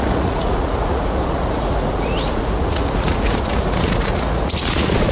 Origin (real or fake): fake